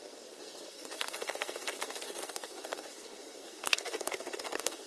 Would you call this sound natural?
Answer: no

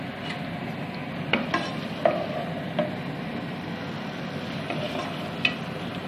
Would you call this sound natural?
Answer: yes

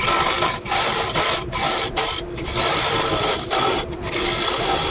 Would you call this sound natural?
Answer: no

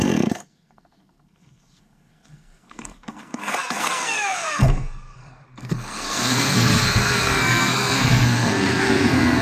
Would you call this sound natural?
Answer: no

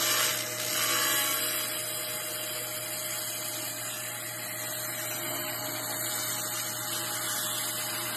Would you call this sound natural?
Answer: yes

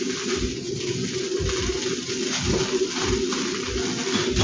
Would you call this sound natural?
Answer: yes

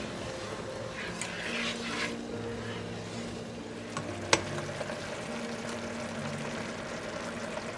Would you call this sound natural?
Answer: yes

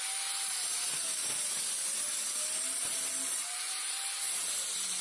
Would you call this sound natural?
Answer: yes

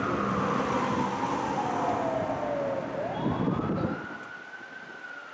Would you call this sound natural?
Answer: yes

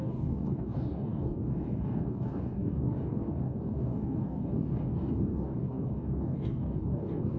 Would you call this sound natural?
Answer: no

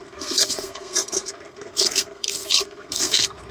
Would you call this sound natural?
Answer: no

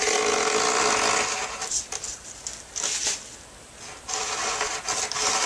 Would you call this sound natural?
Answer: yes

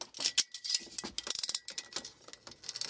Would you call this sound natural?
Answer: yes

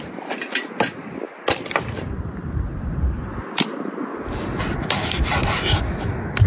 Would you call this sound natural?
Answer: yes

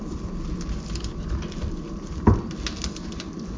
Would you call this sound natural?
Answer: yes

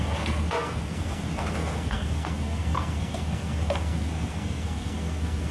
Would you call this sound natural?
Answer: no